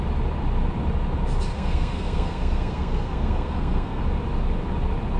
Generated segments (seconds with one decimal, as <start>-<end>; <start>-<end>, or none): 1.5-4.0